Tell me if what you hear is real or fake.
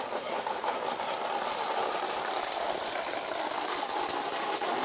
real